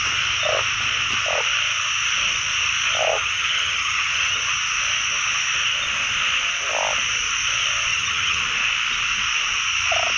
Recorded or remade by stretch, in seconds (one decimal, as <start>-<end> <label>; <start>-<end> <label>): 0.0-3.2 recorded; 3.2-4.4 remade; 4.4-7.9 recorded; 7.9-8.4 remade; 8.4-10.2 recorded